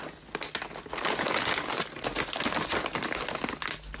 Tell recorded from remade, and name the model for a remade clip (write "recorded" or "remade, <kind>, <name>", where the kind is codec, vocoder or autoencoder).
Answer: recorded